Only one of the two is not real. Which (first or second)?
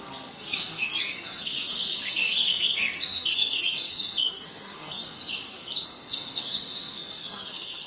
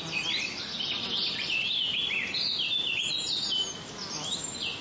first